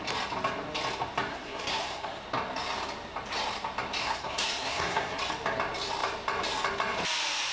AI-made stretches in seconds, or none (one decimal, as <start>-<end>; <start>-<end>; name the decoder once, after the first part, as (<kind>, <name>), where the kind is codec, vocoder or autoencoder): 1.3-2.2 (codec, SNAC); 4.0-5.2